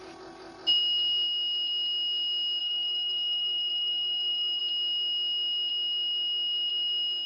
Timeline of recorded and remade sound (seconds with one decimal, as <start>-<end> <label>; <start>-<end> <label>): 0.0-2.6 recorded; 2.6-4.6 remade; 4.6-7.3 recorded